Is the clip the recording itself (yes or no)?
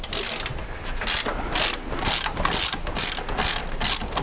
yes